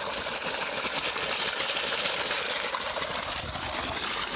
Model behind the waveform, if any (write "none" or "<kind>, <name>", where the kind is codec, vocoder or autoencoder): none